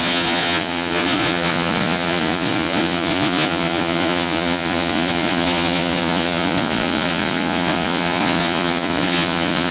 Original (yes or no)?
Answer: no